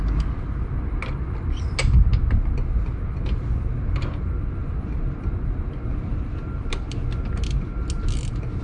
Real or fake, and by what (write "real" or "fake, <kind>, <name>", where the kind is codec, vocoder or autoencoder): real